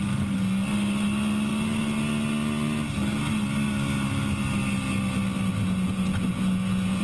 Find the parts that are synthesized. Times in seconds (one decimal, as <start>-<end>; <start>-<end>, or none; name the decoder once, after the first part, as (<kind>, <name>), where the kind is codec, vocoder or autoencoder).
5.6-7.0 (vocoder, Vocos)